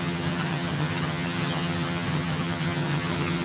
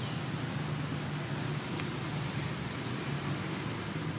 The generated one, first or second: first